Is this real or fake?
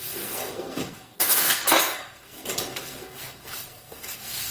fake